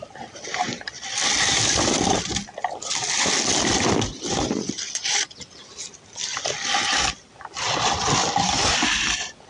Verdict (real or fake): fake